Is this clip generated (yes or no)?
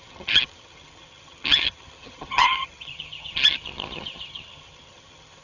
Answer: yes